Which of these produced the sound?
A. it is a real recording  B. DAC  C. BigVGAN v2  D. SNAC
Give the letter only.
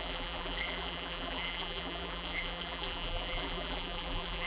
C